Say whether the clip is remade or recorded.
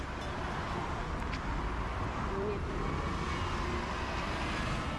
recorded